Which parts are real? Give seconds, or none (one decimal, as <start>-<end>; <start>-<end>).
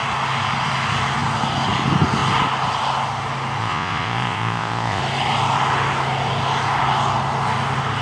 0.0-3.6; 5.0-8.0